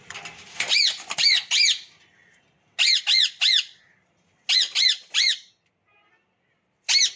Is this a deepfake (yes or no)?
no